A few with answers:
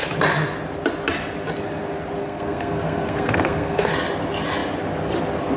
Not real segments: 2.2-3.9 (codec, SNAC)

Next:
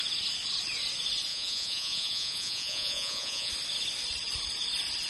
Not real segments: 1.3-3.5 (vocoder, Vocos)

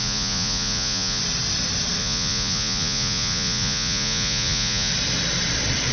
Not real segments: 0.0-1.2 (vocoder, Vocos); 2.0-4.9

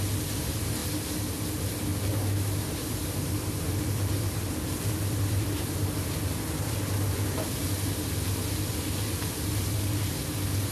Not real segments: 0.0-0.8 (vocoder, BigVGAN v2); 1.5-1.9; 2.7-10.7

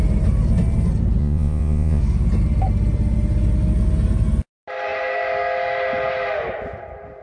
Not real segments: 1.2-2.0 (vocoder, Vocos)

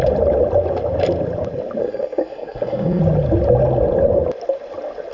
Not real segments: 1.8-3.0 (codec, SNAC)